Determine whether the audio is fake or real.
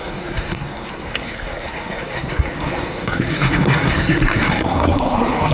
fake